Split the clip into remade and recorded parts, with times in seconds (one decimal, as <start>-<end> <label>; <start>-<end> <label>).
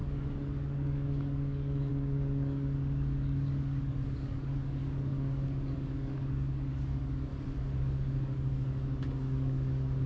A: 0.0-7.3 remade; 7.3-7.8 recorded; 7.8-10.1 remade